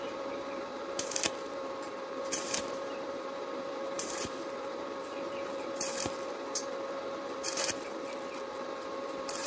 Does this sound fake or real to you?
fake